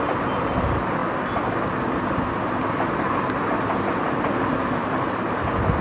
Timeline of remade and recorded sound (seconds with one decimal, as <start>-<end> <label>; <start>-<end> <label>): 0.0-5.8 recorded